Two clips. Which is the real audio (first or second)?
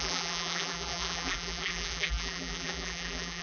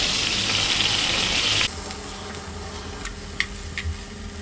second